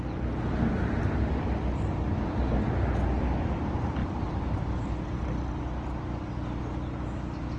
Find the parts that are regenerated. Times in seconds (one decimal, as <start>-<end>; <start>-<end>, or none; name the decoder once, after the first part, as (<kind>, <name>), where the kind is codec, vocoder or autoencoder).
none